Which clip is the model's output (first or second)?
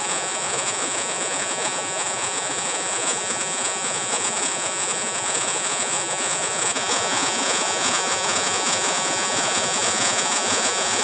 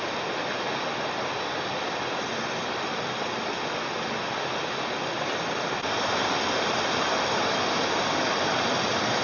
first